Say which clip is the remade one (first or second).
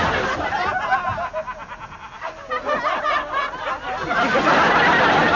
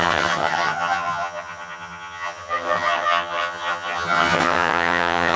second